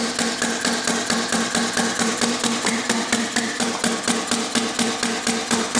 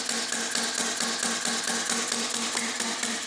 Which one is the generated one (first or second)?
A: first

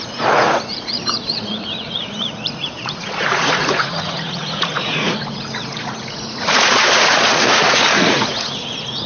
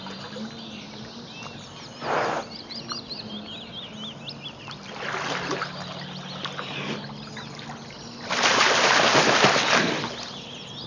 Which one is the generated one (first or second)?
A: first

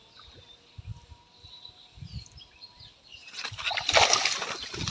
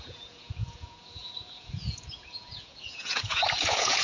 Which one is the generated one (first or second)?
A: second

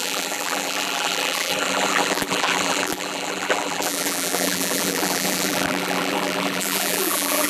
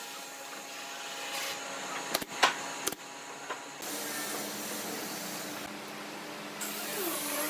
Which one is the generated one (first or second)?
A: first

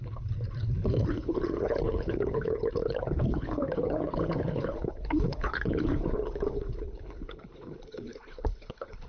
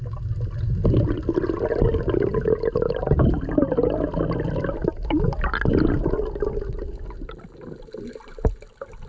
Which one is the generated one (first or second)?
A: first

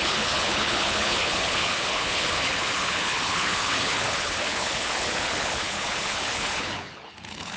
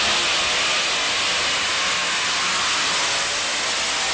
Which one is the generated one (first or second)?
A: first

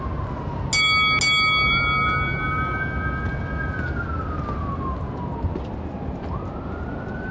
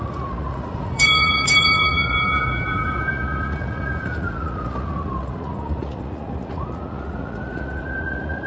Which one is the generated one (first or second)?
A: second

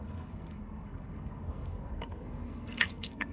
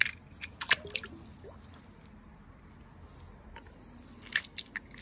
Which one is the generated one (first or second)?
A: first